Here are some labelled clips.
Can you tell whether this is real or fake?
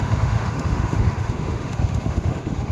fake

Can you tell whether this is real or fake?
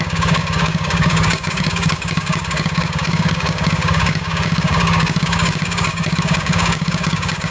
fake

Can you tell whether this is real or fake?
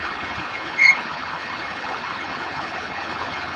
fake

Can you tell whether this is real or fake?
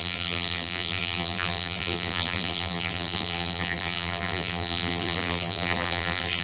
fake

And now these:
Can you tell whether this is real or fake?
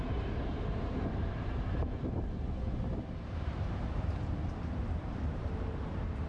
fake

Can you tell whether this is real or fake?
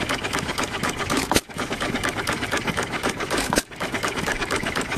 fake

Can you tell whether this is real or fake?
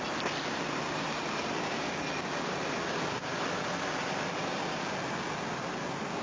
real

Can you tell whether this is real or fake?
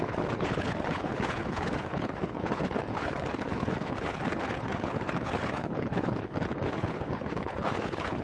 fake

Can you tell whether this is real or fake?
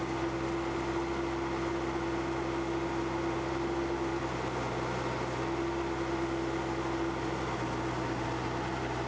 real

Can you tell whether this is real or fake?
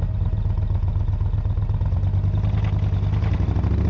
real